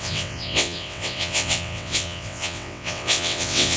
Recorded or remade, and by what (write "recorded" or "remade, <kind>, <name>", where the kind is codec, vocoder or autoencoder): remade, vocoder, WaveNeXt